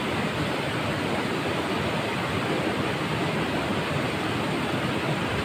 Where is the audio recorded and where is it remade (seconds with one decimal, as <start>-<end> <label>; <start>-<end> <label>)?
0.0-5.4 remade